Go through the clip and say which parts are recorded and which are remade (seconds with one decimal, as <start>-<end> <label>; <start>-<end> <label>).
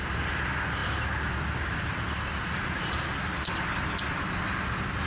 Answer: 0.0-5.1 recorded